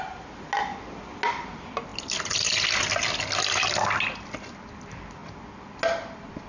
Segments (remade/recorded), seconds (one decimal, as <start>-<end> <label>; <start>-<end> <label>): 0.0-6.5 recorded